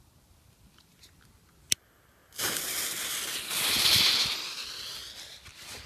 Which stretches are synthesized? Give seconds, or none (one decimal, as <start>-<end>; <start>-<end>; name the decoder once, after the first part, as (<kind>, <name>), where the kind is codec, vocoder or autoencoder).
0.0-2.2 (vocoder, BigVGAN v2); 3.6-5.9

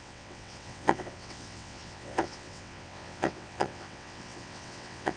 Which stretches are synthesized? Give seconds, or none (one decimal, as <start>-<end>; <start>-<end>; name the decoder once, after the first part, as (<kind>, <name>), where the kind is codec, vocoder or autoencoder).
0.0-5.2 (vocoder, WaveNeXt)